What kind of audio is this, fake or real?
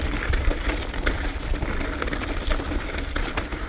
fake